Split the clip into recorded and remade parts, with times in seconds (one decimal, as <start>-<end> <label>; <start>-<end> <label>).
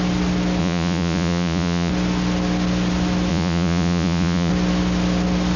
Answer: 0.0-0.6 recorded; 0.6-1.9 remade; 1.9-3.3 recorded; 3.3-4.5 remade; 4.5-5.6 recorded